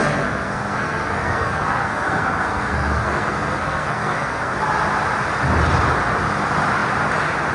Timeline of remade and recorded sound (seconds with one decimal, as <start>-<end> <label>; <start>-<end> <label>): 0.0-4.5 remade; 4.5-7.5 recorded